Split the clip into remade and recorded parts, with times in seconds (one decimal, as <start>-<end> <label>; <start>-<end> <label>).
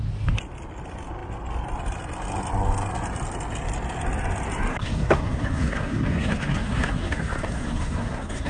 0.0-4.7 recorded; 4.7-8.5 remade